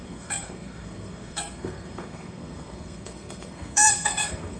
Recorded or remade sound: remade